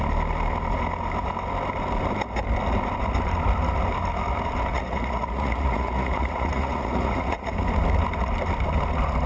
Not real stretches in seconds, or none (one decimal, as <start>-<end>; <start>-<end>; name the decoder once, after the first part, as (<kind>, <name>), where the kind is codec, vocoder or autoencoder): 4.7-7.5 (vocoder, Vocos)